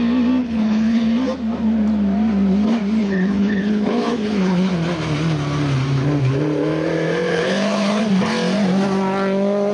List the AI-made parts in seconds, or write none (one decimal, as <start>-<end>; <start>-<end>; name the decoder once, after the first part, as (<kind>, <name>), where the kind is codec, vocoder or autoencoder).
0.4-1.1 (codec, HILCodec); 3.0-4.7; 7.3-8.0